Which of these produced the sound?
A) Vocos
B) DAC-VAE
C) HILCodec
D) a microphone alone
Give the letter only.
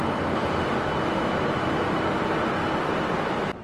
D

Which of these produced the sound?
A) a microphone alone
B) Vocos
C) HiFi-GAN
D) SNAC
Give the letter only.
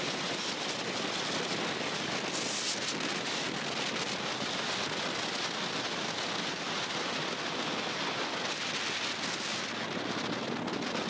A